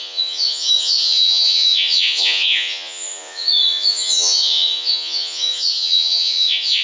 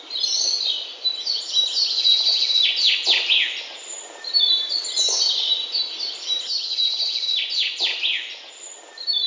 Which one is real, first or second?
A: second